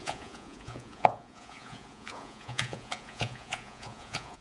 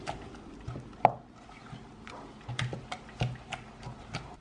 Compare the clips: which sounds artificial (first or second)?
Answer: first